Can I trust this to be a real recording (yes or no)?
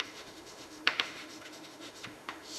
no